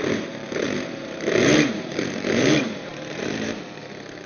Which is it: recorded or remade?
remade